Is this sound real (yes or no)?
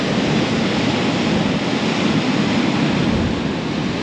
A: yes